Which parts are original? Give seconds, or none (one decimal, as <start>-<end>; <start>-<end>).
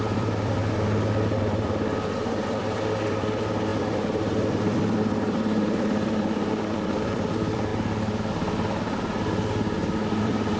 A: 0.6-1.4; 7.7-10.2